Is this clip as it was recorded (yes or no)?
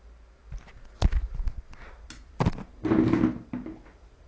yes